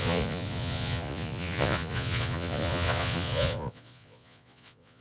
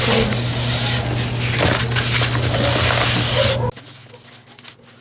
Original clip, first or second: second